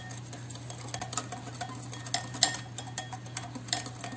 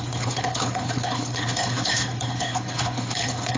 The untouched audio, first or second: first